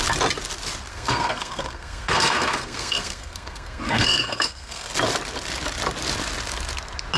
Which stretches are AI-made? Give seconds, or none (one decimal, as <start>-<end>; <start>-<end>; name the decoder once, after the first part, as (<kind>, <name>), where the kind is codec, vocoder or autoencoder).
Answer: 0.9-4.9 (codec, SNAC)